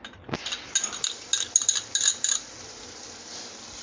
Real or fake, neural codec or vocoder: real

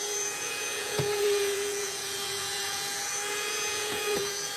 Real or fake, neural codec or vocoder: fake, vocoder, Vocos